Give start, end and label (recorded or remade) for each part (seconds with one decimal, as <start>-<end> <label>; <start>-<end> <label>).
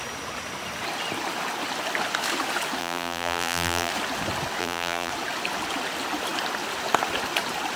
0.0-2.8 recorded; 2.8-3.9 remade; 3.9-4.6 recorded; 4.6-5.1 remade; 5.1-7.8 recorded